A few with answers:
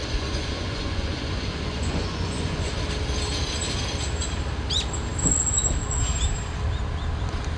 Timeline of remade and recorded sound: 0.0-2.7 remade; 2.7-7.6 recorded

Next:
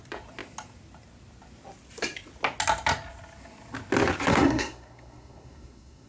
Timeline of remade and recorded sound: 0.0-4.3 recorded; 4.3-6.1 remade

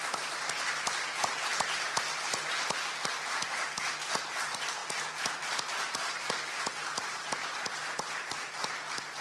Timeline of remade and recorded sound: 0.0-9.2 recorded

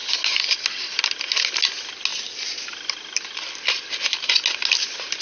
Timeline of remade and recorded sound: 0.0-5.2 recorded